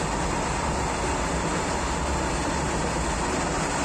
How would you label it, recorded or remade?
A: recorded